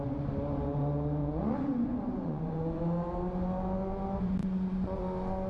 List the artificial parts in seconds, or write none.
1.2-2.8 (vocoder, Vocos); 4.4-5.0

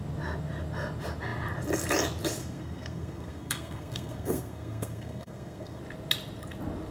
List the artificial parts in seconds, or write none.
2.4-5.8 (codec, SNAC)

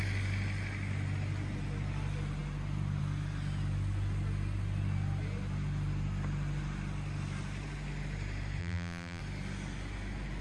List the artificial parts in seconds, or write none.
8.6-9.2 (vocoder, BigVGAN v2)

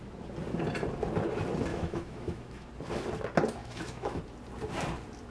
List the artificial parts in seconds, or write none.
1.7-2.7 (autoencoder, DAC-VAE); 3.6-4.2